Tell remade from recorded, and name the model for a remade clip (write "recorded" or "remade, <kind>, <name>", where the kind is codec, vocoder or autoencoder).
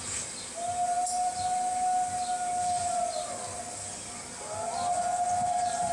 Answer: recorded